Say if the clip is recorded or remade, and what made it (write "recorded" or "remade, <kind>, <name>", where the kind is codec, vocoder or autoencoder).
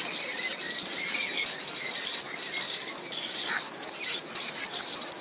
recorded